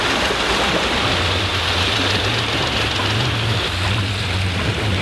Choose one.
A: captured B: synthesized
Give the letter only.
A